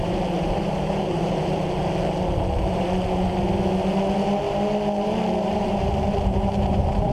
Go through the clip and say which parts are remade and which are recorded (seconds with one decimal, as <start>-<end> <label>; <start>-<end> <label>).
0.0-1.6 remade; 1.6-2.7 recorded; 2.7-3.3 remade; 3.3-5.3 recorded; 5.3-7.1 remade